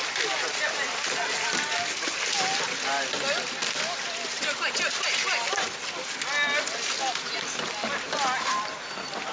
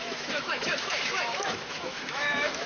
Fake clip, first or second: second